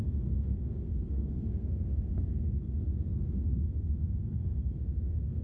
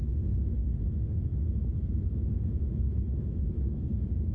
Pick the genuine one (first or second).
second